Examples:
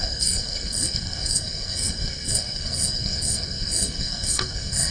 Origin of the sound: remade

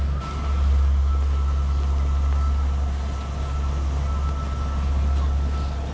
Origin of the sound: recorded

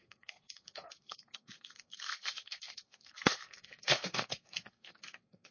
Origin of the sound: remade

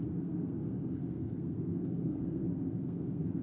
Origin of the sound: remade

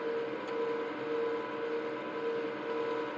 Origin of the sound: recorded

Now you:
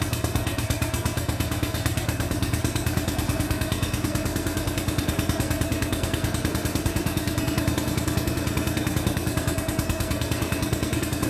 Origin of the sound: remade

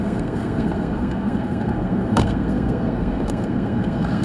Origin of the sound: remade